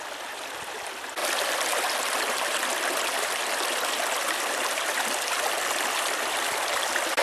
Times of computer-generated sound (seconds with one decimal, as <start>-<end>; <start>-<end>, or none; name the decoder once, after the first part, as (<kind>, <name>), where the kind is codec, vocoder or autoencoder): none